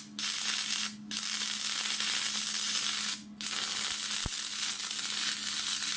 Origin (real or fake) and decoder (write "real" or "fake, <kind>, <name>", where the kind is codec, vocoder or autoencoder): real